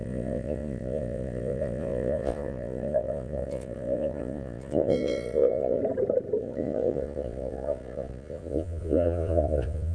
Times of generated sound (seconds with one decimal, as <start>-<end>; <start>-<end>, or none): 0.0-5.8; 6.4-9.9